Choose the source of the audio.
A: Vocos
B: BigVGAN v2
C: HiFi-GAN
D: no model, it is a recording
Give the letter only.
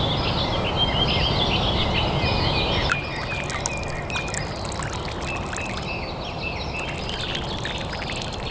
D